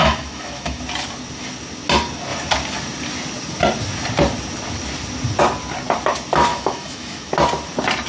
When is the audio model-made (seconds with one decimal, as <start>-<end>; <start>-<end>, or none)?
0.0-0.8; 6.5-7.3